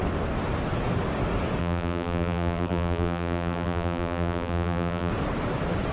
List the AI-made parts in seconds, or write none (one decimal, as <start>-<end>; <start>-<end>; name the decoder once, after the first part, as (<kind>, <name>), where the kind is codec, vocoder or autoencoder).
1.6-5.1 (vocoder, BigVGAN v2)